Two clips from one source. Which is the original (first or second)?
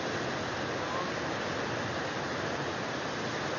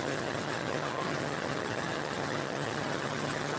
first